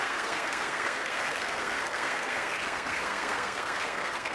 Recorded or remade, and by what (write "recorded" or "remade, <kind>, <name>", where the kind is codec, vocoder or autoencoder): remade, codec, SNAC